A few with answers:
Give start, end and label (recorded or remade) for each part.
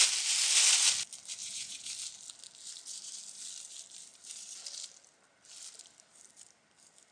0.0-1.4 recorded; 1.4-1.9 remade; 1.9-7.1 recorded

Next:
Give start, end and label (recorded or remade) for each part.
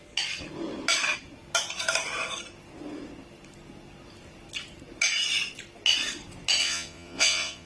0.0-6.6 recorded; 6.6-7.7 remade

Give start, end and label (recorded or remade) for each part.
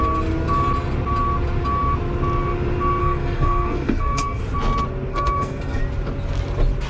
0.0-3.0 recorded; 3.0-4.4 remade; 4.4-5.1 recorded; 5.1-5.8 remade; 5.8-6.9 recorded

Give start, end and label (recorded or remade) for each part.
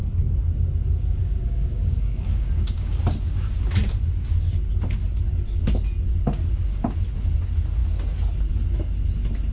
0.0-1.2 recorded; 1.2-3.0 remade; 3.0-9.5 recorded